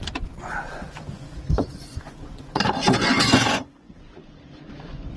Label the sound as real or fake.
fake